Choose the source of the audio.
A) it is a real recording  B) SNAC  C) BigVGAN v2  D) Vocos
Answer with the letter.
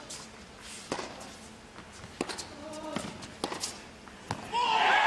A